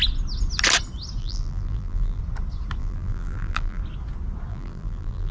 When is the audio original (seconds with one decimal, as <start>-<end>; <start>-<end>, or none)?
0.0-1.2; 2.2-2.8; 3.8-4.5